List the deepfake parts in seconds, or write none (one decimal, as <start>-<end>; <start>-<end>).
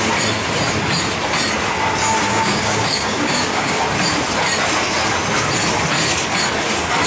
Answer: 2.3-3.8